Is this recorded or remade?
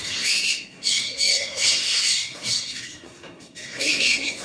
remade